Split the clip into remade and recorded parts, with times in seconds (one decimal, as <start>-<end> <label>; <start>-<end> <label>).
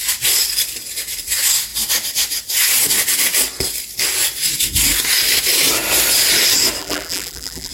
0.0-6.8 recorded; 6.8-7.7 remade